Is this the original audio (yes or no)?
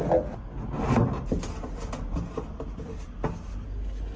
yes